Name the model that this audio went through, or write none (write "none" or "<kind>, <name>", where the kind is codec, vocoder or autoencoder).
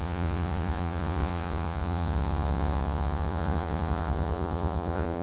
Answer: vocoder, Vocos